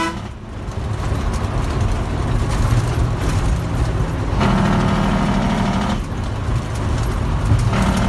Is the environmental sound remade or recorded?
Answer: recorded